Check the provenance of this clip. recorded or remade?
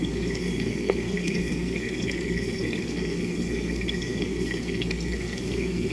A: remade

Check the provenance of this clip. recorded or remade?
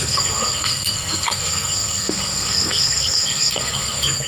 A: remade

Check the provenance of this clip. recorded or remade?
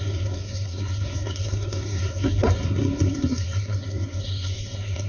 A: remade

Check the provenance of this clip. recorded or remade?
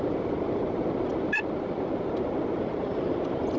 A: recorded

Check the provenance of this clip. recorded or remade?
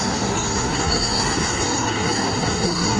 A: remade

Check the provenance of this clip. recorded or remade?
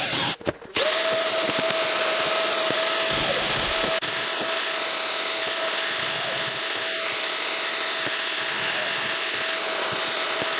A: recorded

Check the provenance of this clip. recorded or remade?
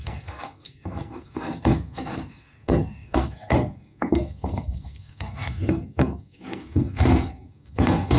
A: remade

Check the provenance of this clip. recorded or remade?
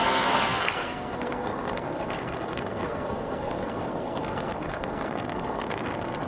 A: remade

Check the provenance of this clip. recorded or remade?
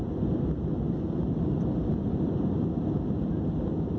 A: recorded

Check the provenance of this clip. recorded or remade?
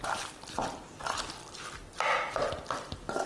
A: recorded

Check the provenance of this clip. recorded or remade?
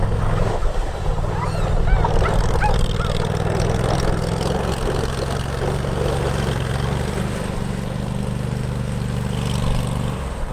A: recorded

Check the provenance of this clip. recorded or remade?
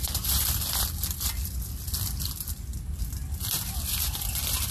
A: recorded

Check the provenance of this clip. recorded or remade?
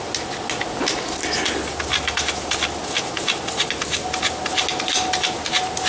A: recorded